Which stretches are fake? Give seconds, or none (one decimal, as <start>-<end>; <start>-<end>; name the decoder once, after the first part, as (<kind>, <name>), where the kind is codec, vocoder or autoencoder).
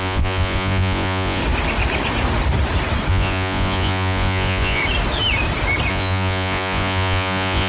0.0-1.4 (vocoder, Vocos); 3.1-4.8; 5.9-7.7